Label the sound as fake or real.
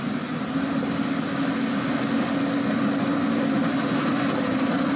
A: real